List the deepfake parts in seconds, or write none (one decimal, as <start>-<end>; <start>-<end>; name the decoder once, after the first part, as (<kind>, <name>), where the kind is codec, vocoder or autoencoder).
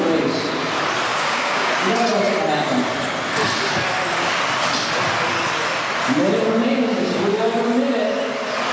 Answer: 1.1-1.7 (codec, DAC); 6.6-7.2